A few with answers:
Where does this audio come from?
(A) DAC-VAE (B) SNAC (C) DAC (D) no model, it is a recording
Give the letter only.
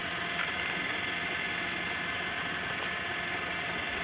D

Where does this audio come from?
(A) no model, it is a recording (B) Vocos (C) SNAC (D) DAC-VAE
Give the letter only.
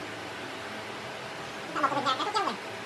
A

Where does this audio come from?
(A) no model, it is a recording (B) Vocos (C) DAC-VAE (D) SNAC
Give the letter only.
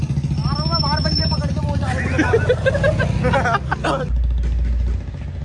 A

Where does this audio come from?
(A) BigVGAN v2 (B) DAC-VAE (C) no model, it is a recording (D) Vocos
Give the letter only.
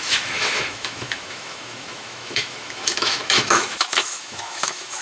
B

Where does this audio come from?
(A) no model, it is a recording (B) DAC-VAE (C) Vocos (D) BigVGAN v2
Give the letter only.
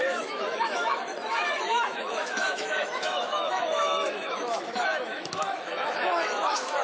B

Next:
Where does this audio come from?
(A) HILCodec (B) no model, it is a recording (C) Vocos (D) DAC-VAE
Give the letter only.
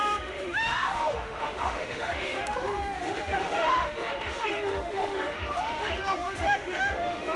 D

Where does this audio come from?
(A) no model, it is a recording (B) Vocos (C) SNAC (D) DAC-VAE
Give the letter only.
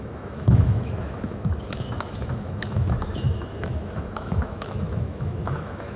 D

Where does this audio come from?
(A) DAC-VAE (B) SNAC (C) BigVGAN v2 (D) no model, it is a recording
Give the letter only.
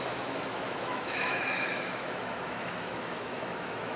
A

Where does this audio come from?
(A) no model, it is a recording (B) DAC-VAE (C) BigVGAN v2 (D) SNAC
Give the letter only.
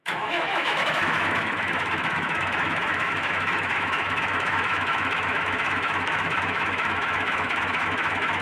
B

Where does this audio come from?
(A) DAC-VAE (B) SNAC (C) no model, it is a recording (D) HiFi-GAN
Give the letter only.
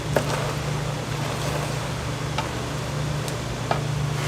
C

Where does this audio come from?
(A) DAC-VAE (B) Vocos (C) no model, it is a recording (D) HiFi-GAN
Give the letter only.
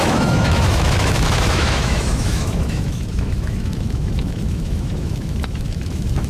A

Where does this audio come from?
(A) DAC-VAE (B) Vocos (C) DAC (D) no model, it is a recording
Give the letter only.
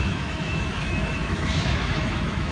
A